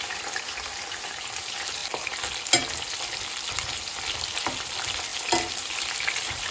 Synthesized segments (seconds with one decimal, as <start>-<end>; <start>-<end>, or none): 5.1-6.1